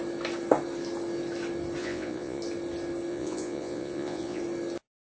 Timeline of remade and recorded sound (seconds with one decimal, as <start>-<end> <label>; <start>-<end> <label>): 0.0-1.8 recorded; 1.8-2.4 remade; 2.4-3.1 recorded; 3.1-4.4 remade; 4.4-5.0 recorded